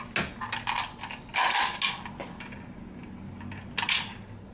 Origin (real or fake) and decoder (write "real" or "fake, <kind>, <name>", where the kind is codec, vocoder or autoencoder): real